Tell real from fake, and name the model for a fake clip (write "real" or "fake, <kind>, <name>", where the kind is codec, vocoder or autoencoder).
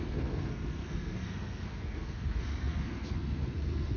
fake, codec, SNAC